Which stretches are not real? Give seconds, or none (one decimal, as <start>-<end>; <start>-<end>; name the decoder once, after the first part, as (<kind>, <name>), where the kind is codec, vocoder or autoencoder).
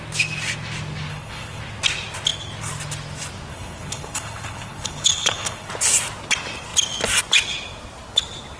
1.1-1.6 (codec, HILCodec); 3.5-5.7